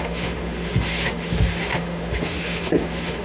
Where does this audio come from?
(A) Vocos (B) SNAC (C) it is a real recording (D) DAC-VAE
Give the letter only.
D